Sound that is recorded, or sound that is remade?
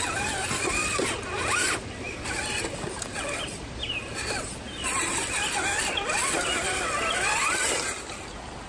recorded